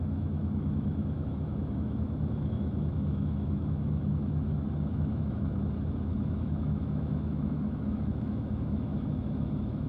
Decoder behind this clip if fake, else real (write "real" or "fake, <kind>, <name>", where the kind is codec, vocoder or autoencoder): fake, autoencoder, DAC-VAE